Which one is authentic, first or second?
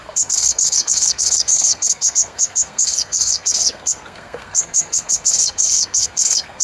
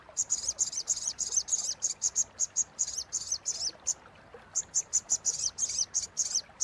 second